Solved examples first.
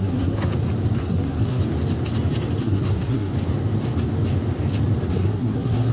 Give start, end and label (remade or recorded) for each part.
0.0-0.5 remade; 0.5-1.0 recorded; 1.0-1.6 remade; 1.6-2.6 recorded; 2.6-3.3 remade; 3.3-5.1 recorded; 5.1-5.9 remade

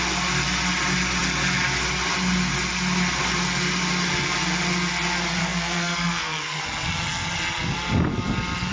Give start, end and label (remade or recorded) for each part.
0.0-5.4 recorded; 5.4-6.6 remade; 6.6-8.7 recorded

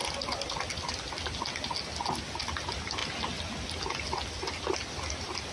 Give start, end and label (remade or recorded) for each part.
0.0-5.5 recorded

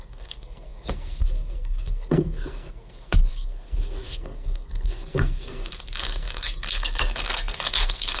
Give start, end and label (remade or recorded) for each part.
0.0-8.2 remade

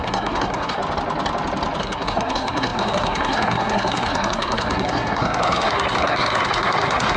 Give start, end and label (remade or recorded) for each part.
0.0-0.8 remade; 0.8-1.8 recorded; 1.8-7.2 remade

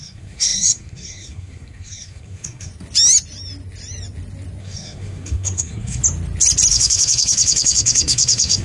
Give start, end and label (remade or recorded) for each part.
0.0-2.7 remade; 2.7-4.6 recorded; 4.6-6.0 remade; 6.0-6.7 recorded; 6.7-8.6 remade

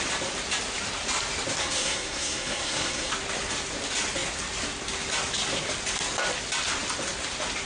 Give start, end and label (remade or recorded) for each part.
0.0-1.6 recorded; 1.6-3.1 remade; 3.1-7.7 recorded

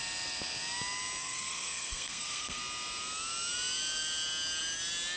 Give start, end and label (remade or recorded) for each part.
0.0-1.2 recorded; 1.2-2.6 remade; 2.6-5.2 recorded